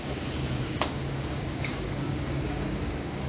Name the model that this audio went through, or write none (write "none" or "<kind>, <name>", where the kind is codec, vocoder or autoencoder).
codec, DAC